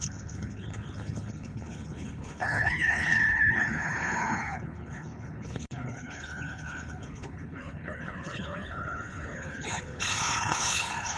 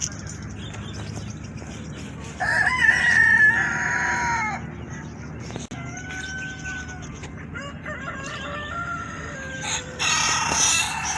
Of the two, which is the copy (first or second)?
first